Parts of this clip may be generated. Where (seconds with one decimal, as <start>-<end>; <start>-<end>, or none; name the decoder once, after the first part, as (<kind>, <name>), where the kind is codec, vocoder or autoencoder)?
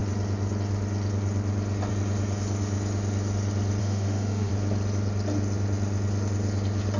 3.8-4.5 (autoencoder, DAC-VAE)